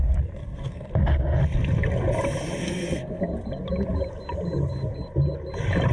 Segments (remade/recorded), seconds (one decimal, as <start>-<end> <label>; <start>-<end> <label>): 0.0-0.4 recorded; 0.4-0.9 remade; 0.9-2.6 recorded; 2.6-3.2 remade; 3.2-5.9 recorded